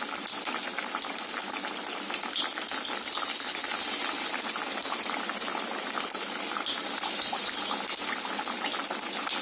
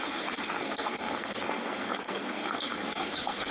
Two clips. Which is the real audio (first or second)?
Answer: first